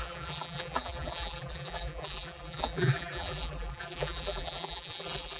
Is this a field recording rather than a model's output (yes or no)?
no